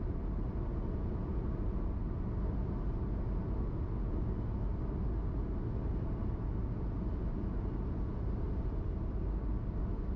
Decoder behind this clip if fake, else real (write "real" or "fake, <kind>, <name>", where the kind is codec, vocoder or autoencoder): real